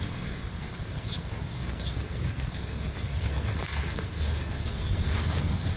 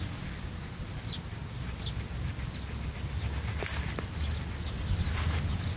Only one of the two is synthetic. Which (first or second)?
first